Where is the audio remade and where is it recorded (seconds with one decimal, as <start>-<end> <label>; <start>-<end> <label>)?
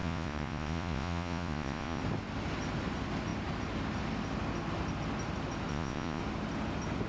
0.0-2.0 remade; 2.0-5.7 recorded; 5.7-6.2 remade; 6.2-7.1 recorded